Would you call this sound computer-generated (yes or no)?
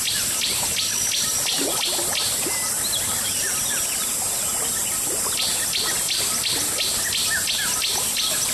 no